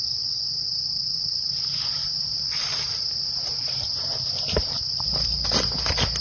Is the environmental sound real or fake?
real